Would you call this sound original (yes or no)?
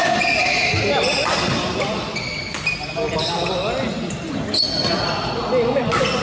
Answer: yes